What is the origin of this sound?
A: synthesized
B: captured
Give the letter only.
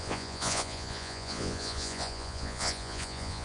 A